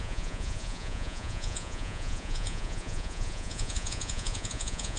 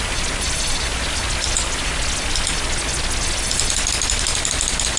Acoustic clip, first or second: second